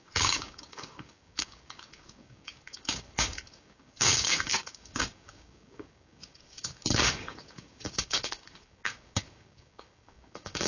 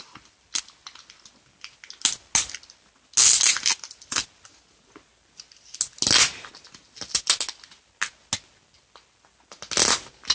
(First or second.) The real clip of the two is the second